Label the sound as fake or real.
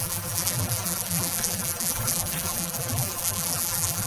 fake